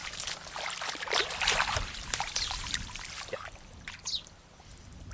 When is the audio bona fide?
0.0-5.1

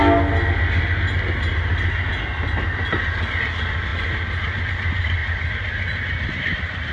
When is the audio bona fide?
0.0-6.9